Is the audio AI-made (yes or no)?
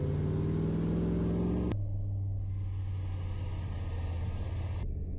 no